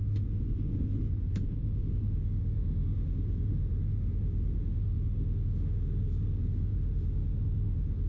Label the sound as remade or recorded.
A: remade